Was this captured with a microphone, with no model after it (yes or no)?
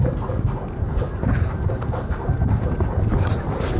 no